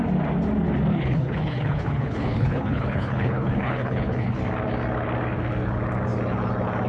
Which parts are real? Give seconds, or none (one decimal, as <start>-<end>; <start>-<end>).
0.0-0.9; 4.4-6.9